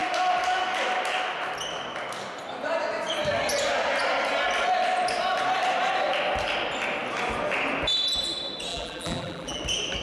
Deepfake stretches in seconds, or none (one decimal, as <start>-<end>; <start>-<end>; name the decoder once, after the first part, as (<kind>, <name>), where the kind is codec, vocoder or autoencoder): 8.7-9.6 (vocoder, BigVGAN v2)